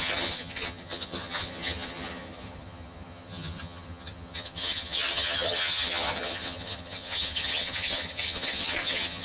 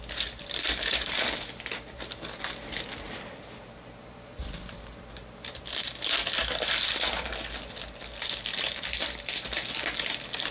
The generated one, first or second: first